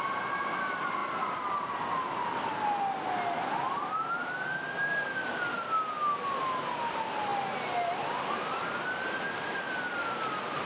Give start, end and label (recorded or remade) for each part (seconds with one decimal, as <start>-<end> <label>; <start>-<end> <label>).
0.0-1.0 recorded; 1.0-2.5 remade; 2.5-10.7 recorded